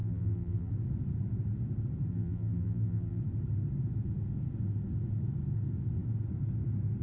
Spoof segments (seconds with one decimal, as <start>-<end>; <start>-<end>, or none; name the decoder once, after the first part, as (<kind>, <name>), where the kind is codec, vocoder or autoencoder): 0.0-0.7 (vocoder, BigVGAN v2); 2.1-3.2